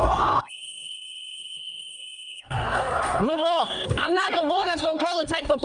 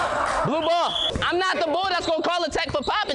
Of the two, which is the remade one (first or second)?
first